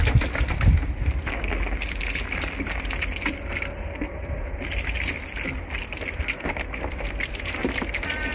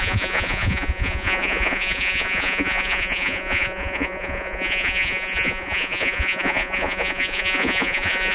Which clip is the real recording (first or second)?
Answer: first